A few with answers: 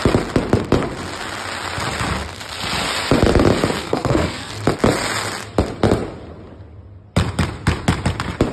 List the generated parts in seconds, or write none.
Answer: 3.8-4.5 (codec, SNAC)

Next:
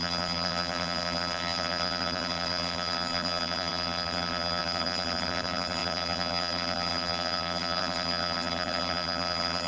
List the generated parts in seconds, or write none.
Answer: 0.0-9.7 (vocoder, BigVGAN v2)

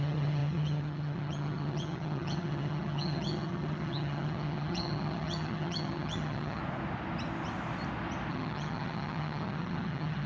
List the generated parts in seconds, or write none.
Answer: 0.0-6.6 (vocoder, HiFi-GAN); 8.3-10.3

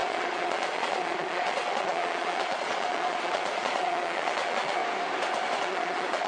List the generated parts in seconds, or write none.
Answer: 0.0-4.8 (vocoder, Vocos); 5.6-6.3

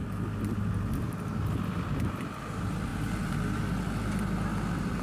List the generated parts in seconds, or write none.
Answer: 2.9-3.7 (vocoder, BigVGAN v2)

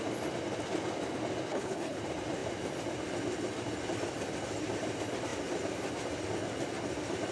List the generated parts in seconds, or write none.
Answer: 1.5-2.0 (codec, HILCodec)